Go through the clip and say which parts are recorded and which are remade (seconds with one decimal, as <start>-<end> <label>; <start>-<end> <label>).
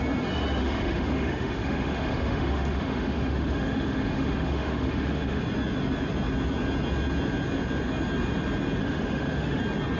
0.0-0.6 recorded; 0.6-5.4 remade; 5.4-8.8 recorded; 8.8-9.6 remade; 9.6-10.0 recorded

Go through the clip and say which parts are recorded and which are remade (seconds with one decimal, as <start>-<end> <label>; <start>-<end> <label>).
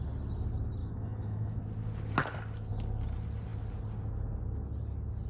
0.0-0.8 recorded; 0.8-1.6 remade; 1.6-5.3 recorded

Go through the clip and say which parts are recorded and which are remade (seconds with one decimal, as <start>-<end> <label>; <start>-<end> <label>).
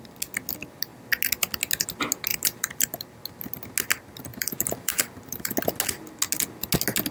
0.0-2.3 recorded; 2.3-3.2 remade; 3.2-4.3 recorded; 4.3-5.5 remade; 5.5-7.1 recorded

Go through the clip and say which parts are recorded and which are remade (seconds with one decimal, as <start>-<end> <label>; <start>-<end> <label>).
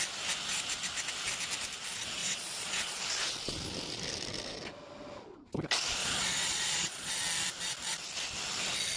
0.0-2.2 recorded; 2.2-3.0 remade; 3.0-6.0 recorded; 6.0-7.1 remade; 7.1-9.0 recorded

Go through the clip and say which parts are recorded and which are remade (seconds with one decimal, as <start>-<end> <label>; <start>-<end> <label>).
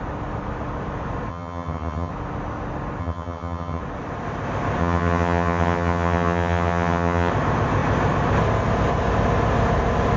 0.0-1.3 recorded; 1.3-2.1 remade; 2.1-3.0 recorded; 3.0-3.8 remade; 3.8-4.8 recorded; 4.8-7.3 remade; 7.3-10.2 recorded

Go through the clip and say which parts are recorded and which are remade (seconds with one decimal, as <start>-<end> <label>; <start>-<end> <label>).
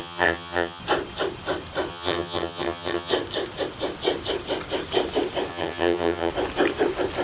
0.0-0.8 remade; 0.8-1.9 recorded; 1.9-3.1 remade; 3.1-5.5 recorded; 5.5-6.3 remade; 6.3-7.2 recorded